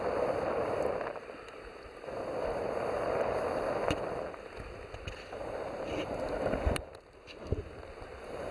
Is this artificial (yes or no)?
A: no